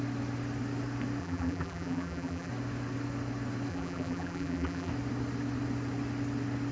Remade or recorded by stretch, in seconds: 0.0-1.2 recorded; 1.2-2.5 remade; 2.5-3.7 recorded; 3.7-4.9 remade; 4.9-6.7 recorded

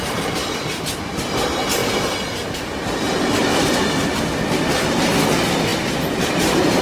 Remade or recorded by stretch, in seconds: 0.0-0.4 recorded; 0.4-0.9 remade; 0.9-1.8 recorded; 1.8-3.2 remade; 3.2-6.8 recorded

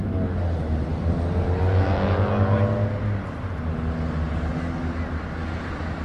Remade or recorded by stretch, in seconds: 0.0-6.0 recorded

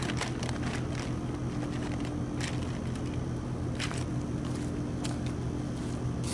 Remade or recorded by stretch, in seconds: 0.0-6.3 recorded